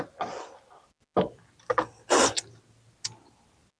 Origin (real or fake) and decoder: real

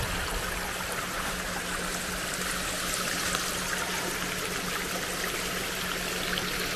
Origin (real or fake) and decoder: real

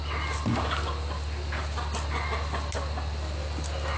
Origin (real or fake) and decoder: real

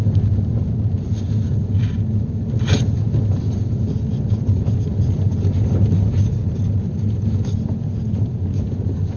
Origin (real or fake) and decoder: real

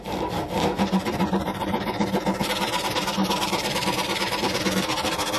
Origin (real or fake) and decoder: fake, vocoder, BigVGAN v2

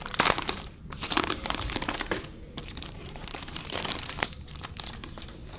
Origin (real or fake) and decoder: fake, vocoder, BigVGAN v2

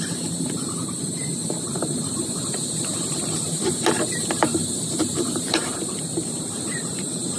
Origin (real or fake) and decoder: fake, vocoder, BigVGAN v2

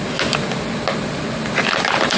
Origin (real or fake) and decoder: real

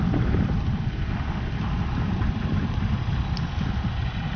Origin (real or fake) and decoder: fake, vocoder, BigVGAN v2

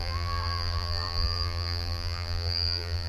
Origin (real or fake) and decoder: fake, vocoder, BigVGAN v2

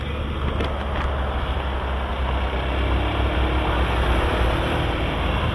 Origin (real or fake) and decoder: real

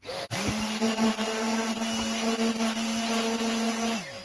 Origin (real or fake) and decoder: real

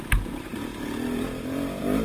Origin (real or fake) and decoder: real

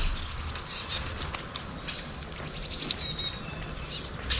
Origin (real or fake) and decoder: real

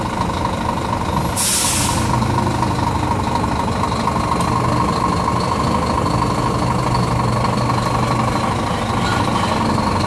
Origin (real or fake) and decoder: real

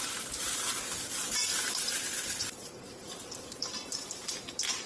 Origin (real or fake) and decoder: fake, vocoder, BigVGAN v2